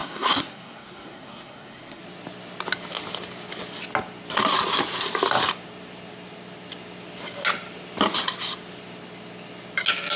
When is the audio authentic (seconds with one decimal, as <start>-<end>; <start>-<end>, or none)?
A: 2.0-10.2